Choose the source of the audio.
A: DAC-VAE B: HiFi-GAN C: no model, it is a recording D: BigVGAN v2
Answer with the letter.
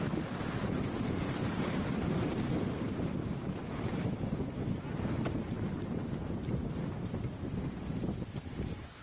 D